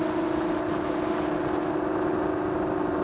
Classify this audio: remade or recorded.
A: recorded